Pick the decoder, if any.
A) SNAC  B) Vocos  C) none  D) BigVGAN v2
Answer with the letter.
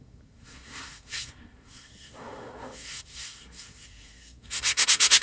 A